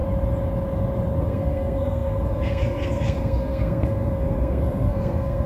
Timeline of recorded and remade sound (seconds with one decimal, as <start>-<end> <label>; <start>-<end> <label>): 0.0-1.2 recorded; 1.2-5.5 remade